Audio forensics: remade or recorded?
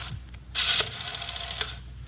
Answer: recorded